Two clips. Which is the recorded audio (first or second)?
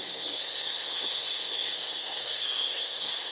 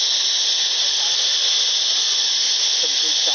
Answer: second